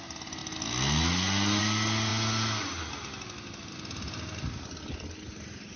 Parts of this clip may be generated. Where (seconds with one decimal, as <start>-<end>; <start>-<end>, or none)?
none